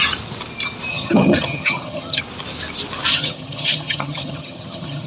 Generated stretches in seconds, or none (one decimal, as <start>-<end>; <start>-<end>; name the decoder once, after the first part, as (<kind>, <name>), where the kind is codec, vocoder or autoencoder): 0.9-2.2 (vocoder, HiFi-GAN); 3.1-5.1